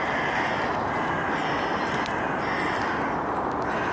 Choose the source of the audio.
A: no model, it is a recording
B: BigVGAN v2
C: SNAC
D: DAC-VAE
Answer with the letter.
A